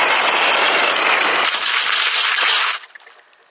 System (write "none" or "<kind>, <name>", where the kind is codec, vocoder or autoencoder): none